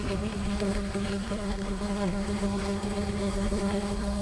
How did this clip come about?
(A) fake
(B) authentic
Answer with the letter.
A